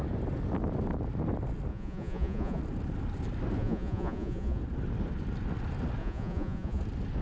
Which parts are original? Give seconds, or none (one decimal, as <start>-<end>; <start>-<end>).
0.0-1.7; 2.6-3.6; 4.6-6.0; 6.8-7.2